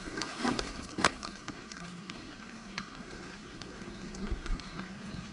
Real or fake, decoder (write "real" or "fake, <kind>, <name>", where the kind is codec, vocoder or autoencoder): fake, codec, SNAC